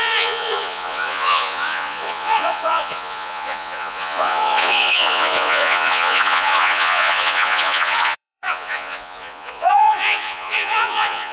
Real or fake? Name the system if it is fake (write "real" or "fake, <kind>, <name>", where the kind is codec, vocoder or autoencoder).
fake, vocoder, Vocos